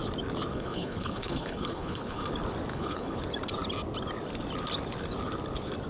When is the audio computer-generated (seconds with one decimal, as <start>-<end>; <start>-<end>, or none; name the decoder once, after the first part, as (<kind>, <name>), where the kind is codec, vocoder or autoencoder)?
0.5-2.3 (codec, HILCodec); 2.7-3.2